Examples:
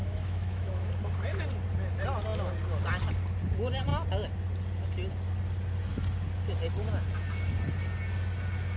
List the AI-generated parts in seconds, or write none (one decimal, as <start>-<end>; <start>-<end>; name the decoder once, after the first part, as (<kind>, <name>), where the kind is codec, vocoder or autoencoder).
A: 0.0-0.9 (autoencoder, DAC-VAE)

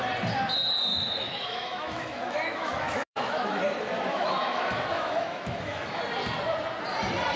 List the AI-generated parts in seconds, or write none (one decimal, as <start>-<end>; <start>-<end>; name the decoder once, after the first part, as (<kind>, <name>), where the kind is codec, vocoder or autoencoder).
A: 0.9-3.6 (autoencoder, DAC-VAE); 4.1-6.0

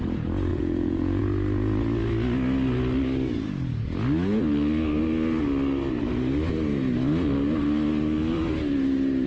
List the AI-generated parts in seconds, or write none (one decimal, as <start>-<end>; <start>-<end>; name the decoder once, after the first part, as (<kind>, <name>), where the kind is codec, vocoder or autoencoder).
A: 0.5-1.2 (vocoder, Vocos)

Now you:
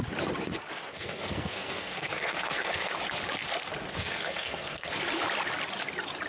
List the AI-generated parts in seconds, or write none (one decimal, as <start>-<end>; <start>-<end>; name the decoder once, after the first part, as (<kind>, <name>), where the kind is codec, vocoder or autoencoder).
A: 0.9-2.9 (codec, SNAC); 3.9-4.9